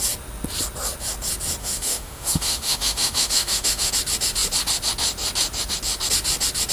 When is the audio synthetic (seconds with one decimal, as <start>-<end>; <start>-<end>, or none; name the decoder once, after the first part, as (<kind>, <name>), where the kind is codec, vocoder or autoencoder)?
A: 1.6-3.9 (autoencoder, DAC-VAE)